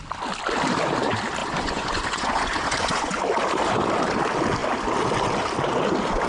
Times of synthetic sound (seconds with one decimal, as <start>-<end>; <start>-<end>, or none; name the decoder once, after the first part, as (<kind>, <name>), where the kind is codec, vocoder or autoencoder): 1.4-3.2 (vocoder, Vocos)